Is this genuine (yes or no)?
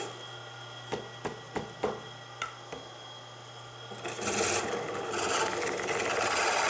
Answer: yes